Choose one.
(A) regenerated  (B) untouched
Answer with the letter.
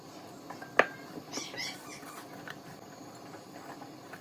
B